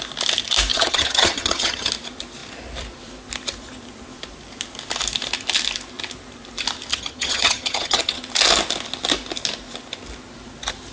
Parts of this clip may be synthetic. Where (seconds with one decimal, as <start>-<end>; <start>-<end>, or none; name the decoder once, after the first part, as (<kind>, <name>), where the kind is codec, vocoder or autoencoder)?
0.7-1.9 (vocoder, HiFi-GAN); 6.9-8.2